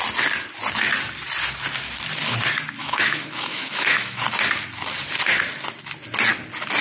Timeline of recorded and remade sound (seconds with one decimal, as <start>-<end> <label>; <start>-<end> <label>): 0.0-2.8 recorded; 2.8-4.2 remade; 4.2-6.8 recorded

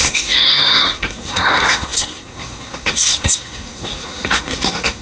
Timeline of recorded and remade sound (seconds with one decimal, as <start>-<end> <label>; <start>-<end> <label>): 0.0-5.0 remade

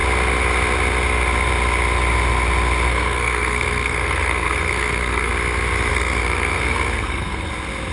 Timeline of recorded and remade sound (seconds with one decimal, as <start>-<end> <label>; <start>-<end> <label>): 0.0-2.9 recorded; 2.9-5.3 remade; 5.3-5.9 recorded; 5.9-7.5 remade; 7.5-7.9 recorded

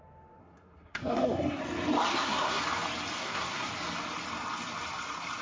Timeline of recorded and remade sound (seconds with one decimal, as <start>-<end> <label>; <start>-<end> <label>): 0.0-0.4 recorded; 0.4-1.6 remade; 1.6-2.1 recorded; 2.1-2.6 remade; 2.6-3.2 recorded; 3.2-3.7 remade; 3.7-5.4 recorded

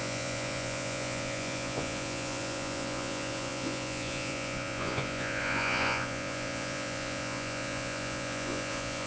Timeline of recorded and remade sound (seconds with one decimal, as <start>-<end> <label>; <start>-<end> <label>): 0.0-9.1 remade

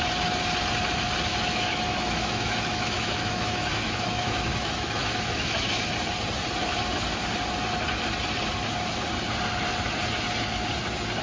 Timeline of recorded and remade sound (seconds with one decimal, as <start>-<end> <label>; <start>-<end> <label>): 0.0-1.3 recorded; 1.3-5.8 remade; 5.8-11.2 recorded

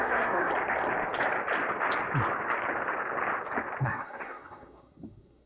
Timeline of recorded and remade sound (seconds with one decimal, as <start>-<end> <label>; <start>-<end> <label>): 0.0-0.5 remade; 0.5-3.8 recorded; 3.8-5.5 remade